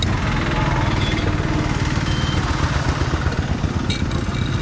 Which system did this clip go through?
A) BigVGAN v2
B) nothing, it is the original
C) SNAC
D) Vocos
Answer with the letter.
B